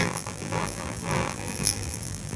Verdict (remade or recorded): remade